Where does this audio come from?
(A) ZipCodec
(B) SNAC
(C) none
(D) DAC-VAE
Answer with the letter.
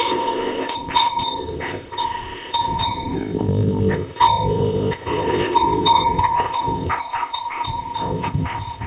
A